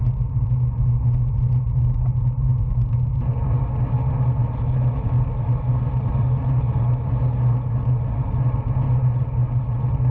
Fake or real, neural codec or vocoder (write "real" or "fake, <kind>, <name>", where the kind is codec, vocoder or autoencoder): real